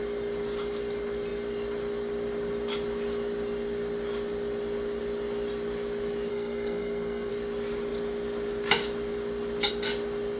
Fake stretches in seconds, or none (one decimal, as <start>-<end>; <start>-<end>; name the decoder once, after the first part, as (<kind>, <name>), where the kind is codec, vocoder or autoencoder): 6.3-7.3 (codec, SNAC)